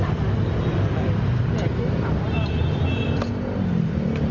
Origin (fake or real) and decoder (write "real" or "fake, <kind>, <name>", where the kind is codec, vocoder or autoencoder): real